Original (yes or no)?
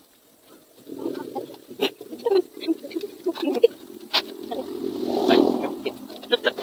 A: yes